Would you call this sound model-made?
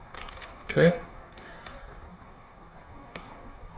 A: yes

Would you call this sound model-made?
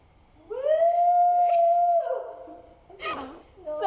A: no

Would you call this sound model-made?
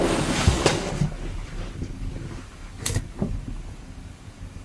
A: yes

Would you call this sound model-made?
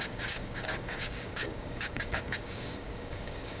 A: yes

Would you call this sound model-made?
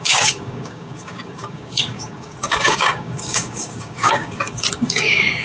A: yes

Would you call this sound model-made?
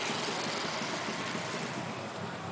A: no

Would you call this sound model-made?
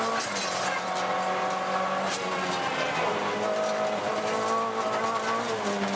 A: no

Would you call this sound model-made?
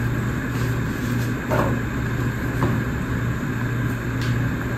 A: no